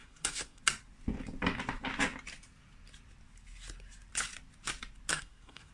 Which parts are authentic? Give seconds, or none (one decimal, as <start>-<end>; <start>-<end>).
0.6-5.1